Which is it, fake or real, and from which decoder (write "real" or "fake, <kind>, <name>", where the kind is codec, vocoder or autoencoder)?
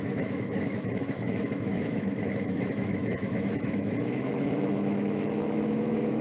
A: fake, autoencoder, DAC-VAE